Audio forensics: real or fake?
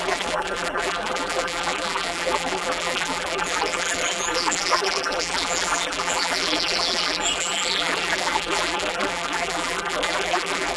fake